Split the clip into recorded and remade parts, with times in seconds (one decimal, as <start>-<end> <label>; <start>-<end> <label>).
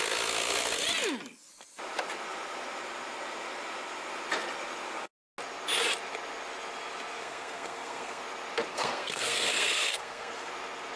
0.0-7.2 recorded; 7.2-8.2 remade; 8.2-8.7 recorded; 8.7-10.5 remade; 10.5-11.0 recorded